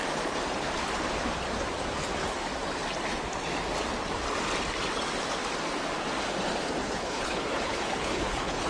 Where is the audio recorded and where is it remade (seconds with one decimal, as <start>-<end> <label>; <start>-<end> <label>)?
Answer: 0.0-6.8 recorded; 6.8-8.7 remade